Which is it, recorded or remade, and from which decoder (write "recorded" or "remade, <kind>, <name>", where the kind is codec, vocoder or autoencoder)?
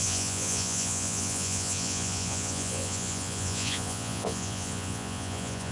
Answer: remade, vocoder, Vocos